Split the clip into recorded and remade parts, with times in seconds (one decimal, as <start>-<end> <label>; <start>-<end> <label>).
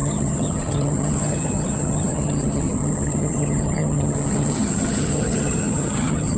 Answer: 0.0-6.4 remade